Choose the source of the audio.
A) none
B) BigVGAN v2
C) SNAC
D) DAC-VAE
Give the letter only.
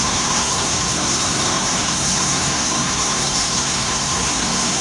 C